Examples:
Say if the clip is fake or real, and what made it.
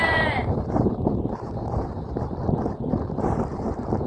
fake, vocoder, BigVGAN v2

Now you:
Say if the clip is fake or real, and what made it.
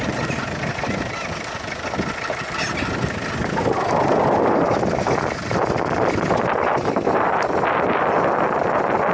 real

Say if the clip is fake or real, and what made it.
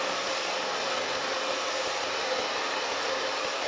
real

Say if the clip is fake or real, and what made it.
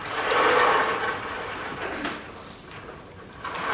real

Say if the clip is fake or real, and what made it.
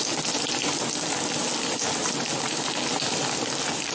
real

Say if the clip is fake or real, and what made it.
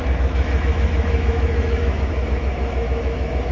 fake, autoencoder, DAC-VAE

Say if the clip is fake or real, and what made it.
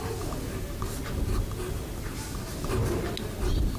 real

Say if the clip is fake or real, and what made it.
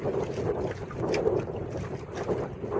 real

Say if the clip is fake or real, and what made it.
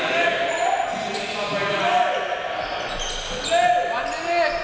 real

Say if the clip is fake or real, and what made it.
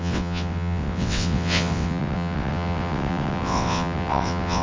fake, vocoder, WaveNeXt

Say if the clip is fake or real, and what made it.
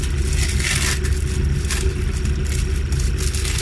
real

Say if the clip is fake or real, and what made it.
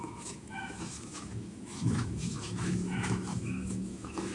fake, autoencoder, DAC-VAE